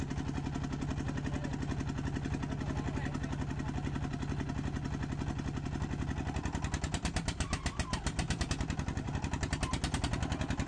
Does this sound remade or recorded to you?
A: recorded